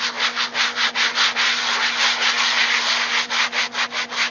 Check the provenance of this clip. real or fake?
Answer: real